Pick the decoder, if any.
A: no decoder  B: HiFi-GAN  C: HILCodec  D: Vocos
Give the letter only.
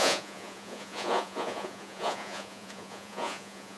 D